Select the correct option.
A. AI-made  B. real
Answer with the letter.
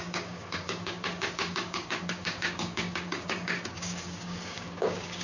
A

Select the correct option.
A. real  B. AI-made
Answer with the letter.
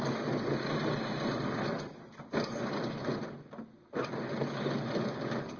A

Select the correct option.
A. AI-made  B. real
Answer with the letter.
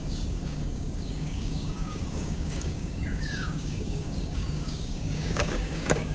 A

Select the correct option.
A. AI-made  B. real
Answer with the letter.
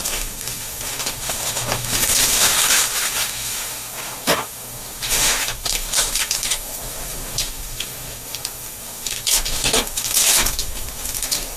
A